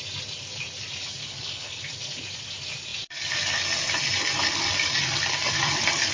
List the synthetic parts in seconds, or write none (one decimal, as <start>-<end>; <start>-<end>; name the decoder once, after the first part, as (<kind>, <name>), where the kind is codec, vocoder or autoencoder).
1.2-1.8 (codec, HILCodec)

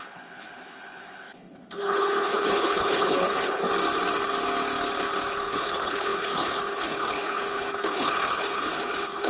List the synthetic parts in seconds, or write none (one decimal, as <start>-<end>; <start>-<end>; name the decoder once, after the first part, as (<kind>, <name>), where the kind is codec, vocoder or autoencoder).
0.0-3.6 (codec, HILCodec); 5.4-9.3